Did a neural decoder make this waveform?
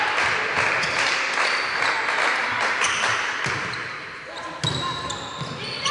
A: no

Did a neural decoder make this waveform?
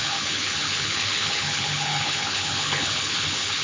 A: yes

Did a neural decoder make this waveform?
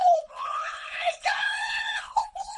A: yes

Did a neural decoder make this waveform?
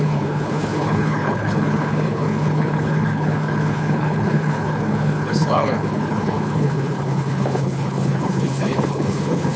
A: yes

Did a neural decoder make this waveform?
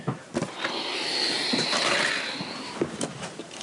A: no